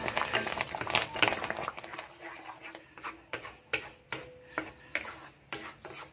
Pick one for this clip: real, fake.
real